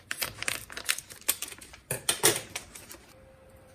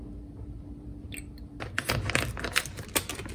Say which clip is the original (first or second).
second